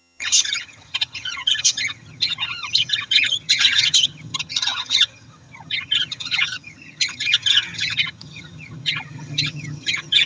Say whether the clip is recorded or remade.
remade